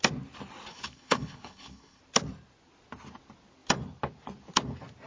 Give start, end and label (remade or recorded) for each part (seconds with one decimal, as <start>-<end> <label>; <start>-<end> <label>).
0.0-0.7 recorded; 0.7-2.0 remade; 2.0-5.1 recorded

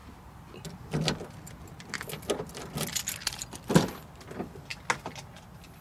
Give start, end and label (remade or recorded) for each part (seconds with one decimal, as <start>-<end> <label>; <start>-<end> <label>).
0.0-5.8 recorded

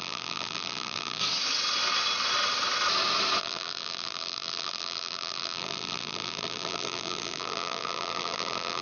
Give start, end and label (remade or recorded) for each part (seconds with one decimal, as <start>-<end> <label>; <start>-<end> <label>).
0.0-1.2 remade; 1.2-3.4 recorded; 3.4-8.8 remade

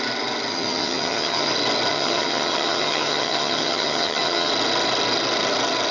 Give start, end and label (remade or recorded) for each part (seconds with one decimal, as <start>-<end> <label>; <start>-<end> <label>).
0.0-0.5 recorded; 0.5-1.5 remade; 1.5-1.9 recorded; 1.9-4.5 remade; 4.5-5.9 recorded

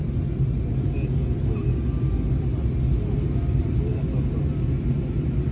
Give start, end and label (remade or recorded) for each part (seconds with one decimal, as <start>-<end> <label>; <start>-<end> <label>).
0.0-5.5 recorded

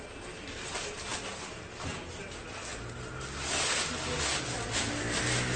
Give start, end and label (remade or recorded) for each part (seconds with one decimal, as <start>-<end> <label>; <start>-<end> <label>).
0.0-5.6 recorded